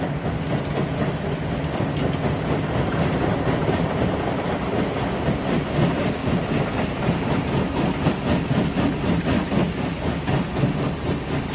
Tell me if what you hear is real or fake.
real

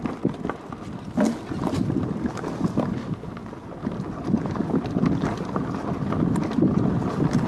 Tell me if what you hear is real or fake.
real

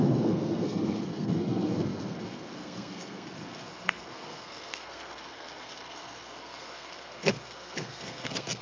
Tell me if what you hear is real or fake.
fake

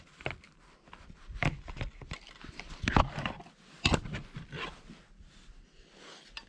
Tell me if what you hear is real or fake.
real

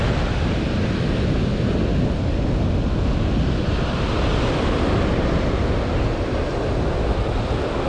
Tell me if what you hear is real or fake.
real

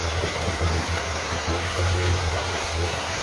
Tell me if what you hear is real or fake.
fake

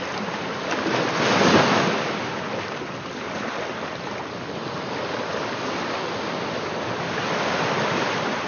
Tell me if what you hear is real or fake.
real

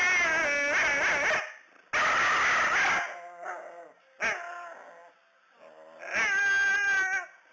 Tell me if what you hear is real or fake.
real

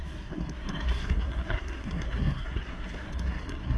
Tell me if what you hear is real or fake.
fake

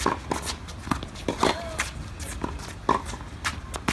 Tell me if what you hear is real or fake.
real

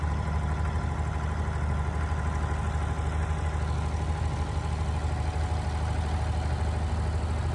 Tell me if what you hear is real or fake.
real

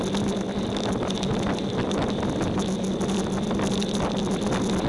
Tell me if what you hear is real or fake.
real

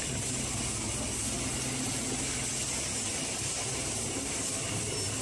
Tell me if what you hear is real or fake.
real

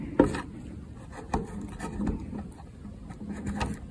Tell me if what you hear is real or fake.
real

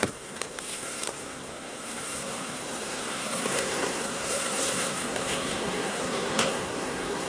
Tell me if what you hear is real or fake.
fake